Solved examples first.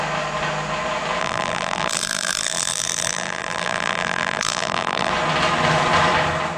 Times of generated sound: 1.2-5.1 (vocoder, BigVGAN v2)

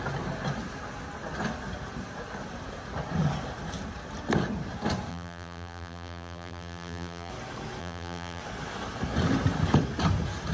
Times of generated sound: 5.1-7.3 (vocoder, BigVGAN v2); 7.8-8.4

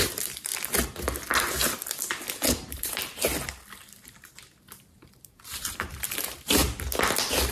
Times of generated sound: 0.0-0.5 (vocoder, BigVGAN v2); 2.7-3.3; 4.9-6.6

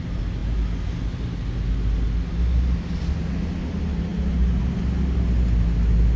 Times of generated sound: none

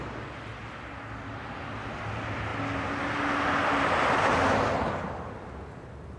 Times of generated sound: none

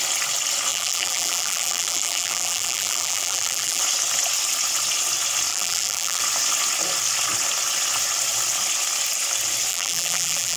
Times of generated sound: 0.7-3.8 (vocoder, BigVGAN v2); 5.5-6.2; 9.7-10.6

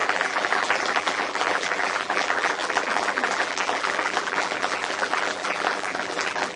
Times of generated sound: 0.0-6.6 (vocoder, BigVGAN v2)

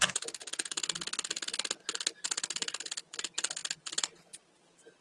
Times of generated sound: none